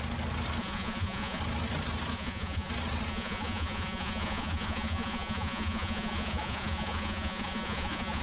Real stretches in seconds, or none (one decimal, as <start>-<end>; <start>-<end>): 0.0-0.6; 1.4-2.1; 2.7-3.1